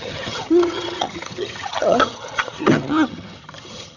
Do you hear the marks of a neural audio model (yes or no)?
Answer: yes